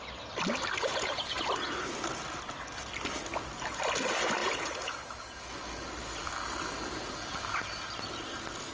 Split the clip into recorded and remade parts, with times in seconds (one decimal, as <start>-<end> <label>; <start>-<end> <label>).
0.0-0.9 recorded; 0.9-1.4 remade; 1.4-4.4 recorded; 4.4-5.5 remade; 5.5-8.7 recorded